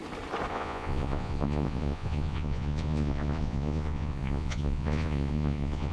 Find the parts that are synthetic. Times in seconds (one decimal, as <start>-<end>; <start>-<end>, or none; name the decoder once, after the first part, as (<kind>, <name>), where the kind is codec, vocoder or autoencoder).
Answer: 0.5-5.9 (vocoder, Vocos)